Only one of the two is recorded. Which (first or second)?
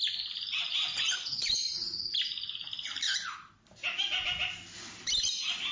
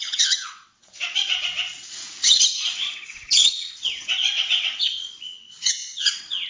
first